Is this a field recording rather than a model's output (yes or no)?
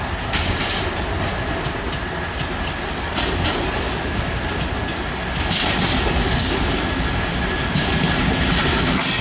yes